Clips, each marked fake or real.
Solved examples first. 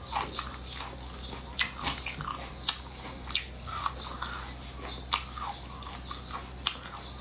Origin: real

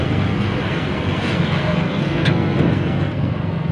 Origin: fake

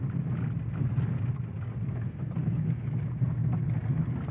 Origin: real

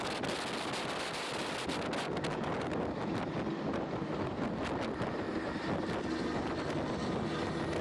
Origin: real